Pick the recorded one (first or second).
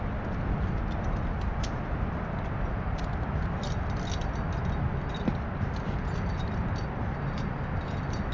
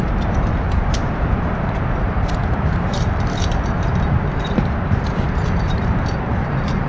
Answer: first